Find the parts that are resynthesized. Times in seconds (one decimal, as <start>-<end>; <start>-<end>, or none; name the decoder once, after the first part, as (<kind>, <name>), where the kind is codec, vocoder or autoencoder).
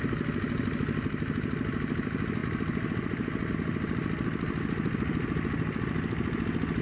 none